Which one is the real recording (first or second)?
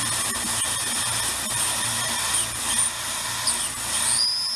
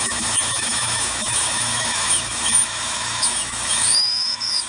first